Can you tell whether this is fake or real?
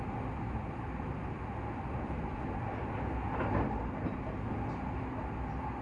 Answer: real